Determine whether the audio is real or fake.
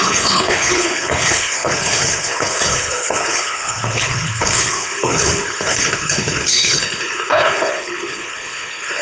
fake